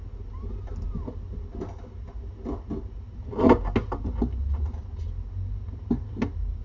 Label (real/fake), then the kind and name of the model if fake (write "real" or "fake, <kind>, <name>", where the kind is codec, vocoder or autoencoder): real